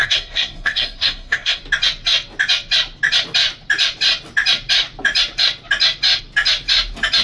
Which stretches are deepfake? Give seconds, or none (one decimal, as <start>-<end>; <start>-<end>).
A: 0.0-1.6

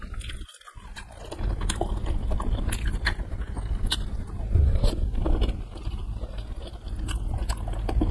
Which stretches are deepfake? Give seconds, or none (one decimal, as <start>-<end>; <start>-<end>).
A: none

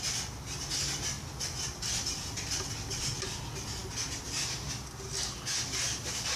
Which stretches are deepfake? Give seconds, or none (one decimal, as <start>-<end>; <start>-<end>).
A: none

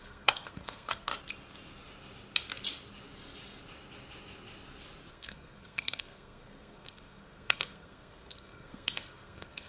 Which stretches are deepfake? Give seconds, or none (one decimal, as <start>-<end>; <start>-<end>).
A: 0.0-1.1; 5.1-9.7

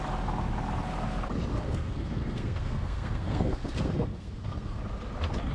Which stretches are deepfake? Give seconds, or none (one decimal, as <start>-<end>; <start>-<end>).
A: 1.5-4.8

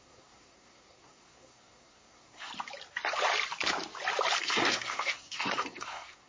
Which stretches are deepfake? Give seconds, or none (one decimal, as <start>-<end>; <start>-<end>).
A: 0.0-2.5; 4.4-6.3